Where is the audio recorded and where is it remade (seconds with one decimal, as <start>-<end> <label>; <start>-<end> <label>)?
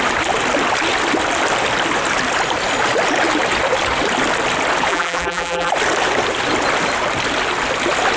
0.0-4.9 recorded; 4.9-5.7 remade; 5.7-8.2 recorded